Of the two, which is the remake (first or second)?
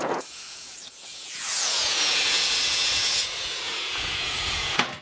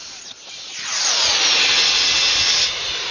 first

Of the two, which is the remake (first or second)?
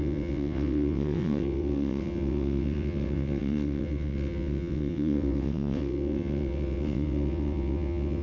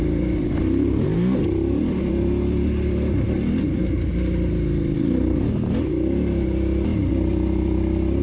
first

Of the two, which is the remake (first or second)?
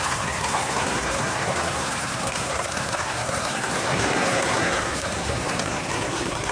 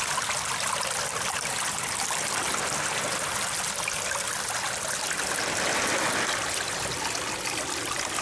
first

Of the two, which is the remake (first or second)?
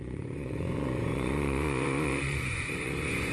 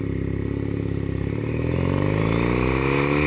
first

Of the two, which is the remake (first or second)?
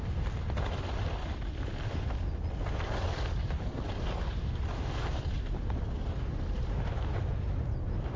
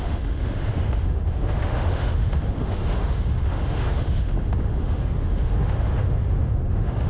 second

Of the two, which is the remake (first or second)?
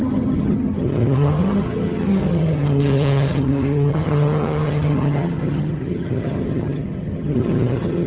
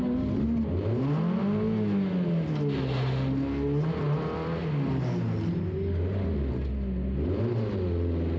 first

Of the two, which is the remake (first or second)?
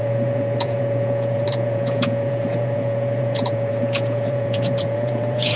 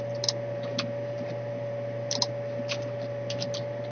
first